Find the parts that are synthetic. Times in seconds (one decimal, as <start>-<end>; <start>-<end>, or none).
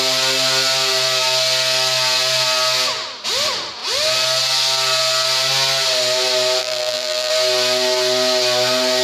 6.6-7.3